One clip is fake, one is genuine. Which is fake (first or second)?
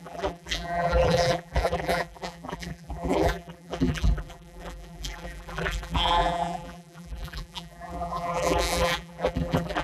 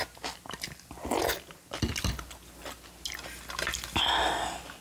first